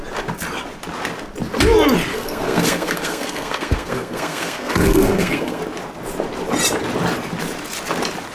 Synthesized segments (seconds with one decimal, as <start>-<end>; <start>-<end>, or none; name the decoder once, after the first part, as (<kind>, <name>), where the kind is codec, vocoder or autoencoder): 2.1-5.6 (codec, SNAC)